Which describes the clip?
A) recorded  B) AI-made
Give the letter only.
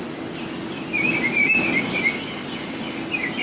A